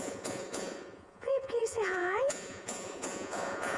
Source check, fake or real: fake